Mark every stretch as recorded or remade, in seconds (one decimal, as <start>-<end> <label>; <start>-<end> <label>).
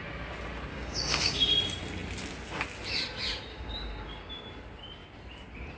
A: 0.0-0.7 recorded; 0.7-1.5 remade; 1.5-3.5 recorded; 3.5-4.3 remade; 4.3-5.8 recorded